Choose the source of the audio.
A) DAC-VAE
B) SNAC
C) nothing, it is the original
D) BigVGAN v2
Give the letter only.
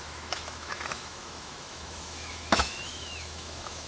A